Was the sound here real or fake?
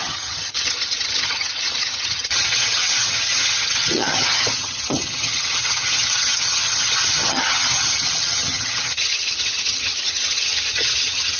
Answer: fake